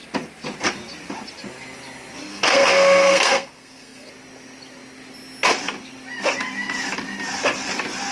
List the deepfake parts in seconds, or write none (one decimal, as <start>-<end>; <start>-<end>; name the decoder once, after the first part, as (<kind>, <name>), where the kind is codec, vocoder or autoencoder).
2.2-4.1 (codec, SNAC)